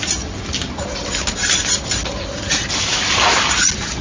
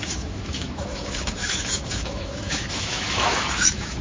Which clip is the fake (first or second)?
second